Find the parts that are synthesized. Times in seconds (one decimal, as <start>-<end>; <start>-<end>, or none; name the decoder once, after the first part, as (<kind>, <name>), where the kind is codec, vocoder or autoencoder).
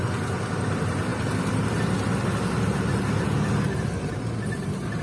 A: none